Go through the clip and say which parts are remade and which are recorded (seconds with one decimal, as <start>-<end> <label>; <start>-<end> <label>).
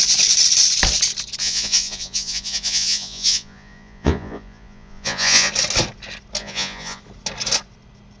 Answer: 0.0-1.4 recorded; 1.4-5.5 remade; 5.5-6.4 recorded; 6.4-7.0 remade; 7.0-8.2 recorded